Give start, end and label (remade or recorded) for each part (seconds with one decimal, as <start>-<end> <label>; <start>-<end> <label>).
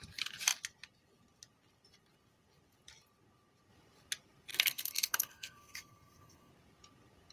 0.0-4.5 recorded; 4.5-6.5 remade; 6.5-7.3 recorded